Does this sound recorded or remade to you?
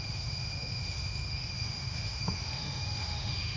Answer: remade